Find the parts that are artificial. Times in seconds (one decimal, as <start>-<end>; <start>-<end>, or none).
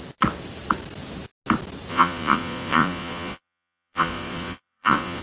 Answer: 1.9-5.2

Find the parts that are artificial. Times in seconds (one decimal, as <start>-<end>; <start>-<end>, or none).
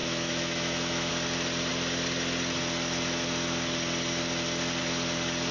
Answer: 0.0-1.1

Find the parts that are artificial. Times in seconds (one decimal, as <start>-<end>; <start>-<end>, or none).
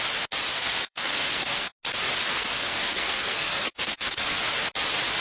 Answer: 0.5-1.7; 2.2-4.4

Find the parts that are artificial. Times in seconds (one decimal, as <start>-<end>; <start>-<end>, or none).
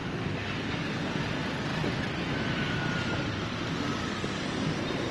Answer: 0.0-1.1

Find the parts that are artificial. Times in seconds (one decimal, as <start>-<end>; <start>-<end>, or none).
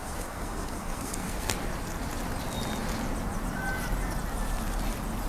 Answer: 0.0-1.5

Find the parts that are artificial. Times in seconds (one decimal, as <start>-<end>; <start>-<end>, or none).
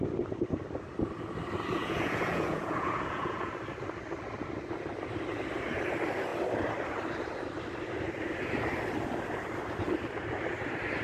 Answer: 1.8-3.5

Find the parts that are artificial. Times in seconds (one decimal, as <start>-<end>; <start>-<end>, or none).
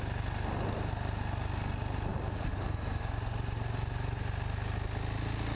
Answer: none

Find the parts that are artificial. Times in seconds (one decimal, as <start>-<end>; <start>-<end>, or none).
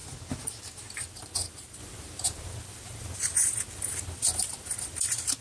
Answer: 1.0-5.4